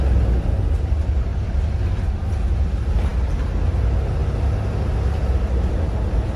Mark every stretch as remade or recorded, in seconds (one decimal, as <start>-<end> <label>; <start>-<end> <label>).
0.0-6.4 recorded